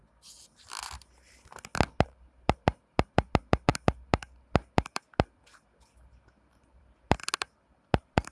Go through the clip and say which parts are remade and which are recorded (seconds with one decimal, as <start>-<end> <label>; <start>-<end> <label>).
0.0-8.3 recorded